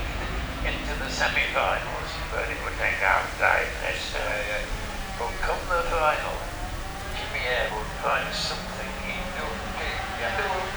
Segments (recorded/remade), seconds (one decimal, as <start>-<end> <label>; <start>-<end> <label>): 0.0-1.0 remade; 1.0-6.9 recorded; 6.9-7.7 remade; 7.7-8.1 recorded; 8.1-10.8 remade